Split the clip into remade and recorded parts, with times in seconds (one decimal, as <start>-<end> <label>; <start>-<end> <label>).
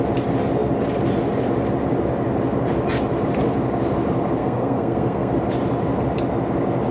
0.0-4.4 recorded; 4.4-5.3 remade; 5.3-6.9 recorded